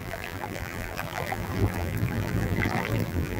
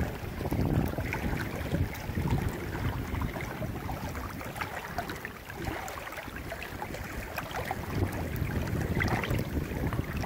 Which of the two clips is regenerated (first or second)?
first